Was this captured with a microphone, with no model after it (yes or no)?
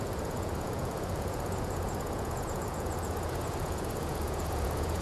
no